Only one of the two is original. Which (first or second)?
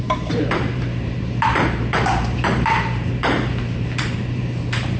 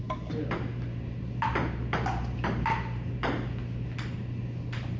second